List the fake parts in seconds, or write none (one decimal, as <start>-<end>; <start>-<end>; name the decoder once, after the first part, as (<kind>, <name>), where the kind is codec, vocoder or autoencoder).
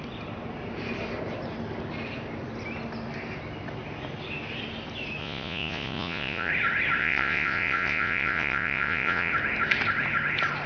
5.2-6.5 (vocoder, Vocos); 7.0-9.3